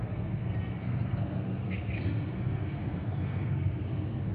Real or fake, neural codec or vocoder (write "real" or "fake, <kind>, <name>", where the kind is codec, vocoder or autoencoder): fake, codec, SNAC